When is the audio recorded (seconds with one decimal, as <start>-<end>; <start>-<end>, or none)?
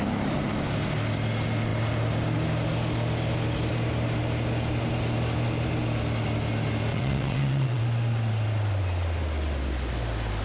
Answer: 0.0-6.9; 7.8-10.4